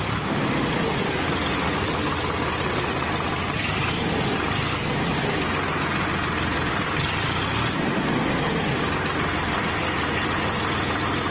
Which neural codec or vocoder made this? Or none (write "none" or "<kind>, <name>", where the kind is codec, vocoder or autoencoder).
none